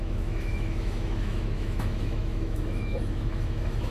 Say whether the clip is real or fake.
fake